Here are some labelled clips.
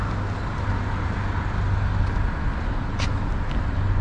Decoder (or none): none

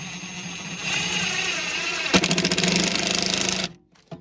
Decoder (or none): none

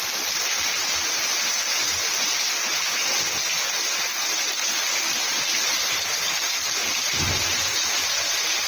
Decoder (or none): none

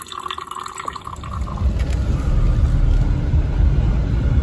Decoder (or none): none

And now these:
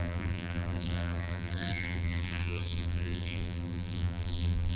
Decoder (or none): vocoder, BigVGAN v2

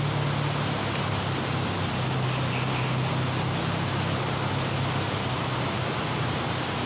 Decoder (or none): none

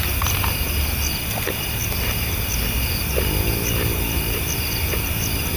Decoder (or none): none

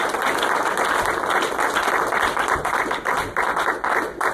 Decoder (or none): none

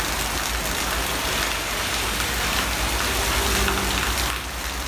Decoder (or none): none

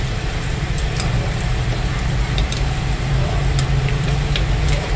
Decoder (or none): vocoder, BigVGAN v2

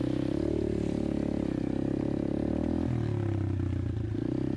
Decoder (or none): none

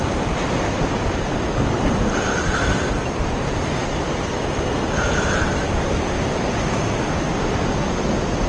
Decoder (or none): none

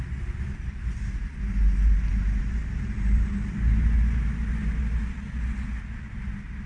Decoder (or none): none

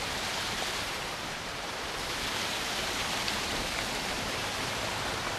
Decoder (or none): vocoder, BigVGAN v2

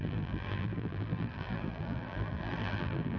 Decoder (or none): vocoder, BigVGAN v2